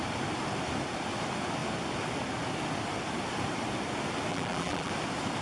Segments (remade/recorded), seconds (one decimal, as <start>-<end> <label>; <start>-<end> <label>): 0.0-4.3 recorded; 4.3-4.9 remade; 4.9-5.4 recorded